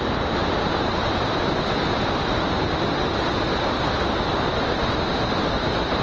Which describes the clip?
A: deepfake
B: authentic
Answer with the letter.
B